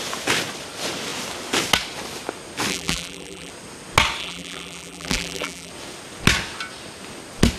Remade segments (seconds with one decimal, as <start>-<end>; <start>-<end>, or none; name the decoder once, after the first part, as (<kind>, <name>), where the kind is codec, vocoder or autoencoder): 2.7-3.5 (vocoder, BigVGAN v2); 4.2-5.7